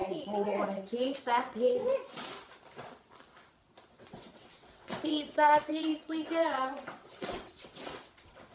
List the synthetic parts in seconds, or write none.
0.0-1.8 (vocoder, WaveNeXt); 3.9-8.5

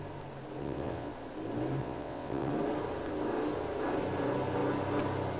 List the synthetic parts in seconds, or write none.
0.6-1.1 (vocoder, WaveNeXt); 1.8-2.5

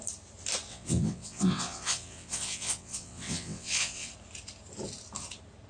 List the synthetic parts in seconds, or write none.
0.7-4.1 (vocoder, WaveNeXt)

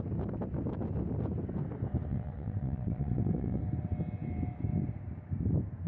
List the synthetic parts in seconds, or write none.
2.1-3.6 (vocoder, WaveNeXt)

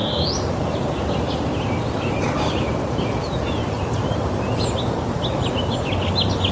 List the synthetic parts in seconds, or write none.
none

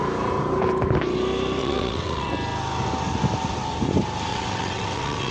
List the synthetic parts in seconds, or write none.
1.6-2.3 (vocoder, WaveNeXt); 4.3-5.3

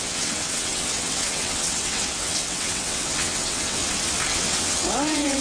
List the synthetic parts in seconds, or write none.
0.0-3.8 (vocoder, WaveNeXt); 4.3-5.4

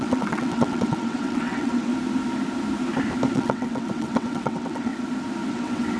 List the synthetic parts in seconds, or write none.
0.0-1.9 (vocoder, WaveNeXt); 3.3-4.9; 5.5-6.0